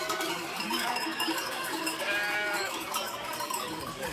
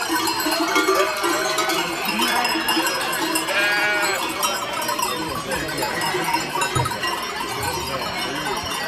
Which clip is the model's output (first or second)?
first